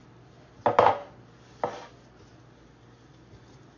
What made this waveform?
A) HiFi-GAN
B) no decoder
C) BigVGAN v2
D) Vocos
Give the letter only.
B